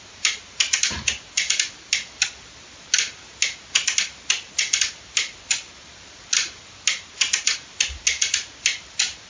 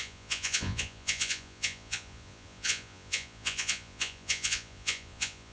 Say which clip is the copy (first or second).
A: second